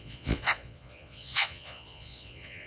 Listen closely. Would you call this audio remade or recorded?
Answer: remade